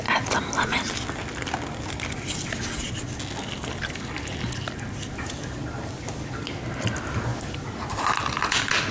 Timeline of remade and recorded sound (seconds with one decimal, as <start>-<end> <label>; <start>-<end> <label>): 0.0-7.3 recorded; 7.3-8.1 remade; 8.1-8.9 recorded